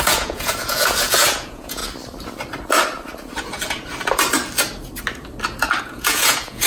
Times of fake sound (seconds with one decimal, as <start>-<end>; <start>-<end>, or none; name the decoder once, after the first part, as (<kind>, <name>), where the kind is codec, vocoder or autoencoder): 0.0-1.8 (vocoder, Vocos); 5.8-6.7